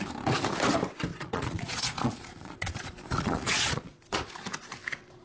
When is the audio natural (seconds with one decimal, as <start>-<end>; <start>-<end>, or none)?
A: 0.0-1.1; 4.2-5.2

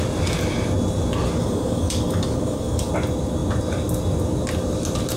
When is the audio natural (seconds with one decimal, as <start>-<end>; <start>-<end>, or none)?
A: 0.0-1.4; 2.9-5.2

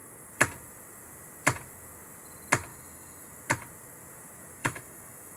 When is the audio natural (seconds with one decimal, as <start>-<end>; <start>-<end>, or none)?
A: 0.0-2.7; 3.3-4.6

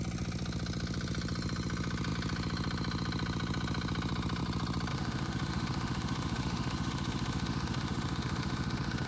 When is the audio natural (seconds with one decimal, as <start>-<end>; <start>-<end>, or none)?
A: 0.0-4.9

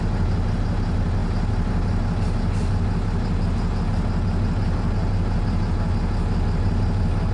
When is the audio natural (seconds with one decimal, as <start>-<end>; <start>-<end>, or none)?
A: 0.0-7.3